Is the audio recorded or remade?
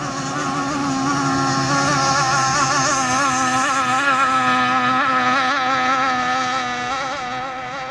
recorded